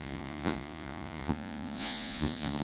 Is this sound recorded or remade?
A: remade